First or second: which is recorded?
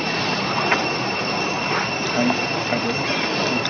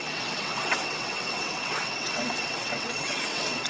first